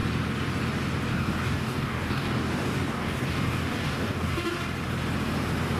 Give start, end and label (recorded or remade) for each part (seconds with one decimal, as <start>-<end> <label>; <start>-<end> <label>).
0.0-1.1 recorded; 1.1-4.6 remade; 4.6-5.8 recorded